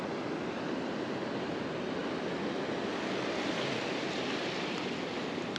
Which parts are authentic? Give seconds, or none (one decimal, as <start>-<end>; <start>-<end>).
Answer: 0.0-5.6